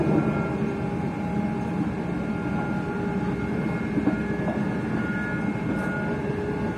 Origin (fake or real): real